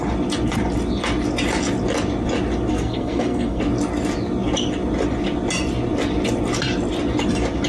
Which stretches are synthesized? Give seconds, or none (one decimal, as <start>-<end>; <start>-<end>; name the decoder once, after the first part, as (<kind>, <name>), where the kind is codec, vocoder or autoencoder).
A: 2.7-3.6 (codec, SNAC)